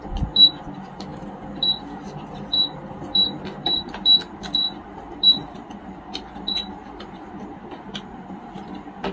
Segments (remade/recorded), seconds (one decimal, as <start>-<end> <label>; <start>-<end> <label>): 0.0-9.1 recorded